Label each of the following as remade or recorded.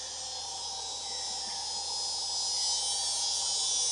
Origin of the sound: recorded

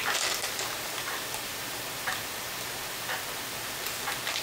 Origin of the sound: recorded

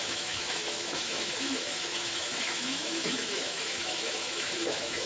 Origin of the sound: remade